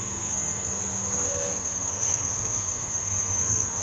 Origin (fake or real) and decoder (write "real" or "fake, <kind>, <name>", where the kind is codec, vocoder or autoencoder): fake, codec, SNAC